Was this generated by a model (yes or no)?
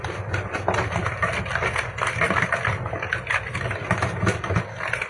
no